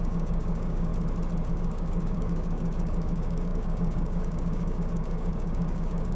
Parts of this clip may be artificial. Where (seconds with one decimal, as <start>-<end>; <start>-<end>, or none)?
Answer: 0.0-0.9; 1.5-6.2